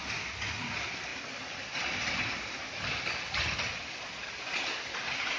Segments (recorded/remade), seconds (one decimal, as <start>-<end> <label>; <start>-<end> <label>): 0.0-5.4 recorded